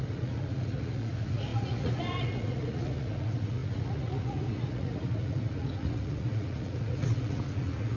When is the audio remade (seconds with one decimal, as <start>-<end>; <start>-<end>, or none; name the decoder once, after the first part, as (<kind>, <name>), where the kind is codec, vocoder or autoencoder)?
0.0-8.0 (vocoder, Vocos)